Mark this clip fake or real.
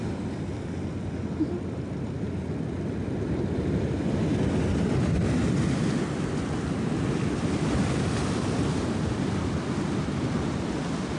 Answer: real